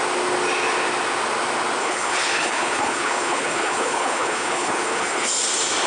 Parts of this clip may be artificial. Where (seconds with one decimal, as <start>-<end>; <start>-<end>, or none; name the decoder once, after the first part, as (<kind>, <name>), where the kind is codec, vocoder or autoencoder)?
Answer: 1.8-5.3 (codec, HILCodec)